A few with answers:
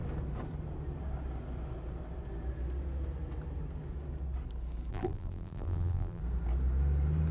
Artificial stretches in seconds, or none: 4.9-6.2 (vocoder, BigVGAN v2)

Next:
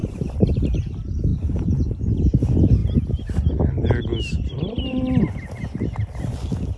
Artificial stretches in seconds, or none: 0.0-0.5 (vocoder, BigVGAN v2); 1.3-2.2

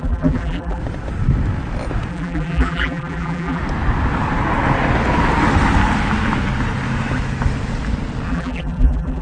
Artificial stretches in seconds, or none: 0.0-0.8 (vocoder, BigVGAN v2); 2.1-3.6; 8.3-9.2

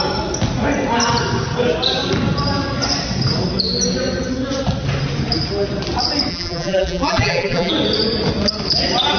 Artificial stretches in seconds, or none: 6.3-7.7 (vocoder, BigVGAN v2)

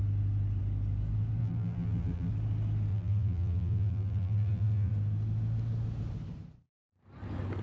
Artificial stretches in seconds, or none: 1.4-2.3 (vocoder, BigVGAN v2); 2.9-4.9

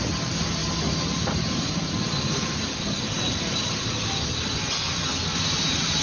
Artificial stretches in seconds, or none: 0.6-4.2 (vocoder, BigVGAN v2); 5.3-6.0

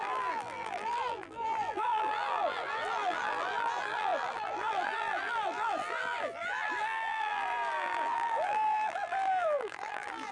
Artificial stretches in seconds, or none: 0.0-10.3 (vocoder, BigVGAN v2)

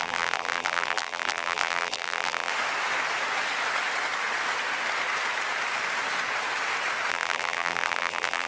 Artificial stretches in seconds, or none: 0.0-2.5 (vocoder, BigVGAN v2); 7.1-8.5